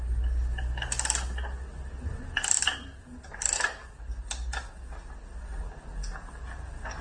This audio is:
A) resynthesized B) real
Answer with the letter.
B